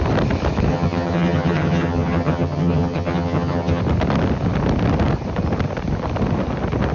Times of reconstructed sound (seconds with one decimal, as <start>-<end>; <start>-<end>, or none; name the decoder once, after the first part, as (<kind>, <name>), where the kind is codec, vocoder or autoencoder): 0.7-3.8 (vocoder, HiFi-GAN)